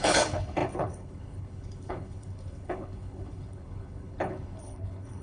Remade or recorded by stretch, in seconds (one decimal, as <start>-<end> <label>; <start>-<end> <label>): 0.0-5.2 remade